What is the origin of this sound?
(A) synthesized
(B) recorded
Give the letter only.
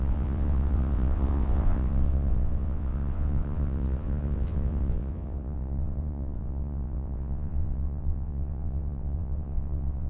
A